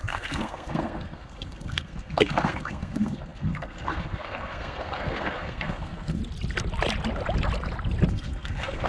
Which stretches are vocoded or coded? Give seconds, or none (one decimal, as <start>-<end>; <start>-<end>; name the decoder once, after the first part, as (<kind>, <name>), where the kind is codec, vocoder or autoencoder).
0.0-6.2 (codec, SNAC); 8.1-8.9